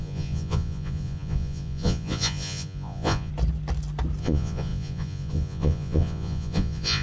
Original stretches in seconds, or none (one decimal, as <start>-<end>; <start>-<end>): 3.3-4.2